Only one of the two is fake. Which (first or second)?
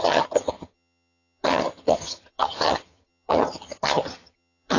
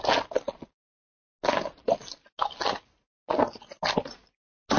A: first